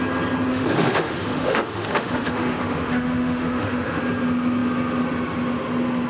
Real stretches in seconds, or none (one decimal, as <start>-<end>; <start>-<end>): 0.0-0.5; 4.0-6.1